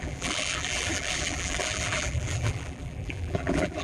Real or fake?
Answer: fake